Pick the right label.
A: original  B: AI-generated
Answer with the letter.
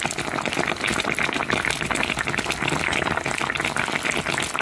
A